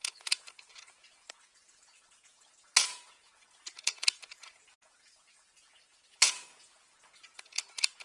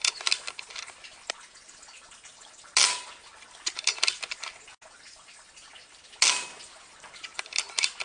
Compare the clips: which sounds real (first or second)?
second